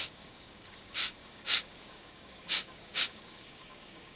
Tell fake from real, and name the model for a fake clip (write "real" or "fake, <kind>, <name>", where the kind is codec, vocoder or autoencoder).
fake, codec, DAC